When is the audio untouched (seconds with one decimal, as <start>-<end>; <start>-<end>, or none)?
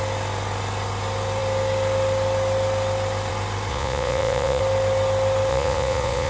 0.0-3.7; 4.6-5.5